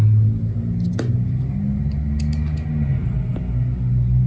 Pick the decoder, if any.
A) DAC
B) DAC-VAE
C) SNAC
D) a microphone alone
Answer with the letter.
D